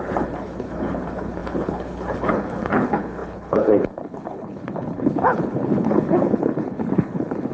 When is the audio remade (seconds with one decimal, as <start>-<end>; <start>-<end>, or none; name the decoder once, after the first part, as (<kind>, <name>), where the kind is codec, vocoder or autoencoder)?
0.0-7.5 (codec, HILCodec)